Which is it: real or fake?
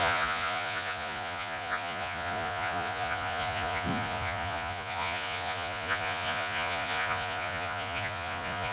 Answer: fake